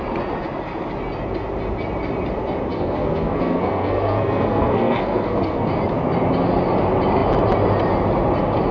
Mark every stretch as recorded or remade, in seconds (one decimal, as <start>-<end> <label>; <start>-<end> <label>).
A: 0.0-2.7 recorded; 2.7-5.7 remade; 5.7-8.7 recorded